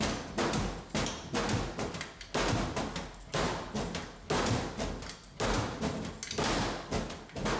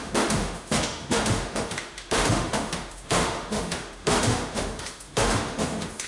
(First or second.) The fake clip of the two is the second